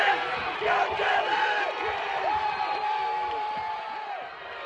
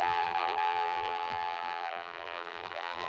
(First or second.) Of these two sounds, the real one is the first